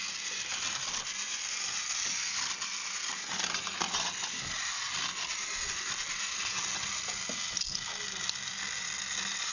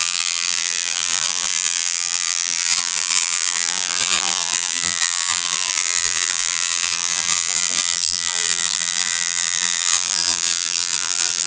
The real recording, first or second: first